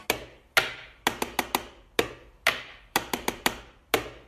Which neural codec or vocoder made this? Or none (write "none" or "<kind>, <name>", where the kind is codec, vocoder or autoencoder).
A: none